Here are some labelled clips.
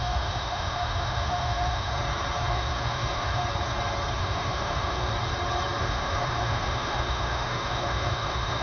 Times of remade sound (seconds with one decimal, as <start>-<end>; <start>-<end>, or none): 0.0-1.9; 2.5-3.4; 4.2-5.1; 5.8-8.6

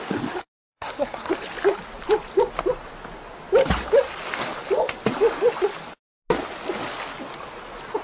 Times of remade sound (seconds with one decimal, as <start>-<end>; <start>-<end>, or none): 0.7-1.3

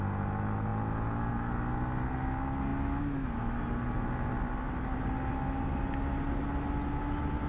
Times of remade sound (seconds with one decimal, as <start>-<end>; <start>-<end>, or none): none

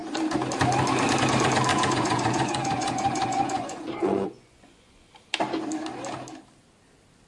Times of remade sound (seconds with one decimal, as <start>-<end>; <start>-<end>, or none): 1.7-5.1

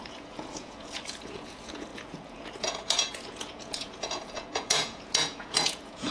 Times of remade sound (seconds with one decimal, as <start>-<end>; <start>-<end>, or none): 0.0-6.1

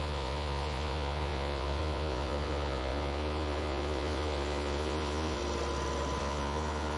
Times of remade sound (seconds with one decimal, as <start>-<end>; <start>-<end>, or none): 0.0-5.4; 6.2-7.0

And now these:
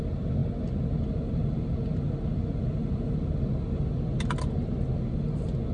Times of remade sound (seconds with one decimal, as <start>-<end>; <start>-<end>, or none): none

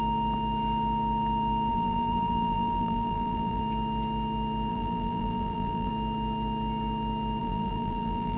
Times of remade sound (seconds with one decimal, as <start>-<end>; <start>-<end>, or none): 1.7-3.6; 4.7-5.9; 7.4-8.4